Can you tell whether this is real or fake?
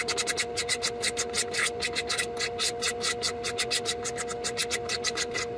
real